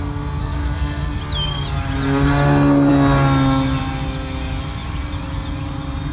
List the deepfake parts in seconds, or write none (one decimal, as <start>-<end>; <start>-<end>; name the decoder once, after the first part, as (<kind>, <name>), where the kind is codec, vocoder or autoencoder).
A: 0.4-1.2 (codec, SNAC)